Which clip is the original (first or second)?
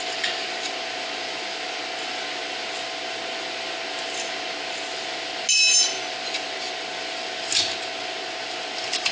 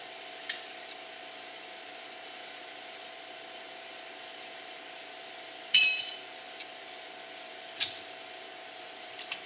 first